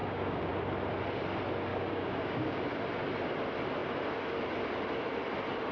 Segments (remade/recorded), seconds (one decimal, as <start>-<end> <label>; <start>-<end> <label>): 0.0-0.5 remade; 0.5-1.7 recorded; 1.7-2.6 remade; 2.6-5.7 recorded

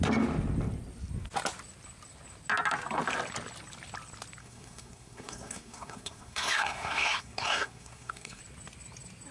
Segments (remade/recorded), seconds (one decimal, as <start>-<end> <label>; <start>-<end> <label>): 0.0-4.4 recorded; 4.4-8.4 remade; 8.4-9.3 recorded